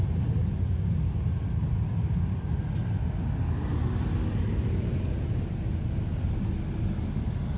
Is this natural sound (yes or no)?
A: yes